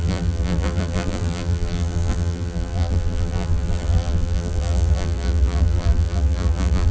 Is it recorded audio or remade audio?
remade